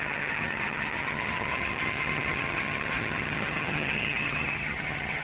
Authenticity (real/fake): fake